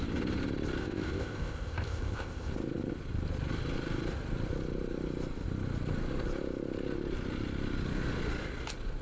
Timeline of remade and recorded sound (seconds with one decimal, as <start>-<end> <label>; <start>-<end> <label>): 0.0-0.8 recorded; 0.8-2.5 remade; 2.5-9.0 recorded